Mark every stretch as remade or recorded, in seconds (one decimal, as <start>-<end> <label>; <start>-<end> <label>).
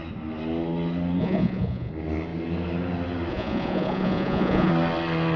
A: 0.0-1.2 recorded; 1.2-1.9 remade; 1.9-3.3 recorded; 3.3-4.7 remade; 4.7-5.4 recorded